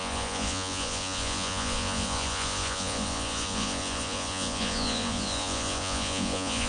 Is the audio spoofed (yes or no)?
yes